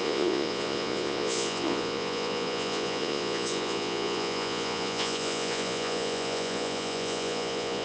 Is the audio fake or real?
fake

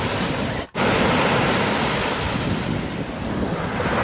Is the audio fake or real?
real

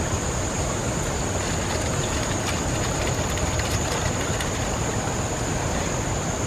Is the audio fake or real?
real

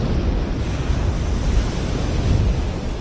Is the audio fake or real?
real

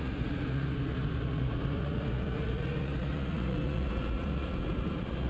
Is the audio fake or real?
fake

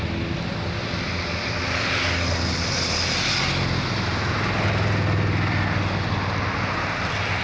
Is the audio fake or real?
real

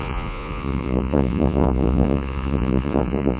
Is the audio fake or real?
fake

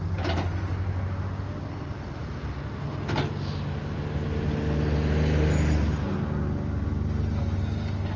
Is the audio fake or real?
real